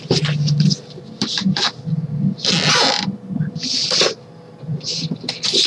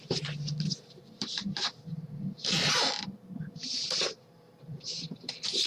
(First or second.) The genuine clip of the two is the first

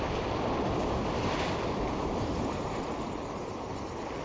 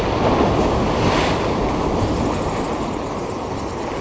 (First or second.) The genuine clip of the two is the second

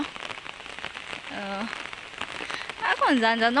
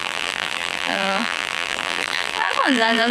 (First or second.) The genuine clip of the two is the first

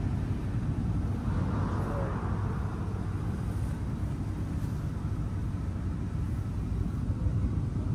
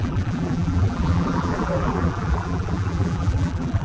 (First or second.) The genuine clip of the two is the first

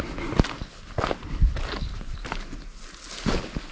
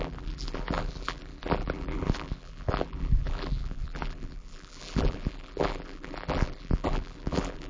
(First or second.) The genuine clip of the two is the first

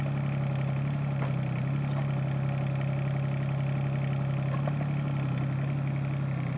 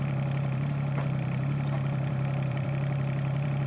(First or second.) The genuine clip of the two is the first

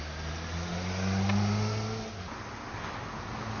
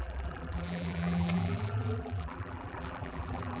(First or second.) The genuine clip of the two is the first